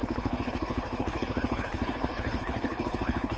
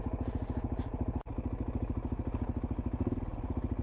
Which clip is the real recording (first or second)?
second